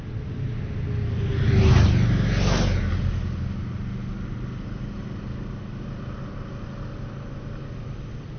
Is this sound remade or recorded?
recorded